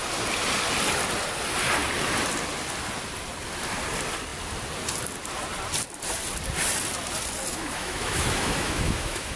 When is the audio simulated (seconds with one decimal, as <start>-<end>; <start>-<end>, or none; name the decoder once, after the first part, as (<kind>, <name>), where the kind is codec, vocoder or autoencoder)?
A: 7.5-9.4 (autoencoder, DAC-VAE)